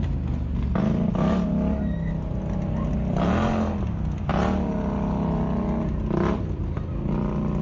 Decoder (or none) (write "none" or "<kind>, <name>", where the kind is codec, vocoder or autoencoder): none